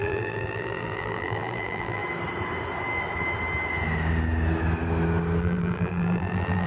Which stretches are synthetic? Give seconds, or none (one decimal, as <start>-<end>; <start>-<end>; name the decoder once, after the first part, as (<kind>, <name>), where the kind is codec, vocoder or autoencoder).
0.0-2.0 (vocoder, BigVGAN v2); 5.4-6.7